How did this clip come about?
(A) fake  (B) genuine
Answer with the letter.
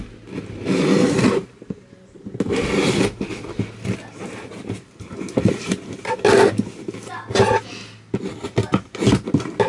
B